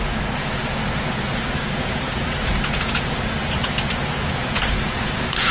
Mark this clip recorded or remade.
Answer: remade